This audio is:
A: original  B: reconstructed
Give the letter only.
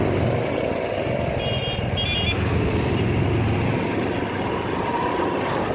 A